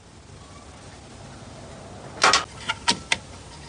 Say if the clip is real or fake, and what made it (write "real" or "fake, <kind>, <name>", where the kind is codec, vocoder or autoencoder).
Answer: real